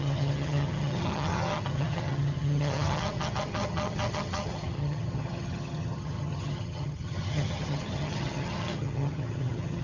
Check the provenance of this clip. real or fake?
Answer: fake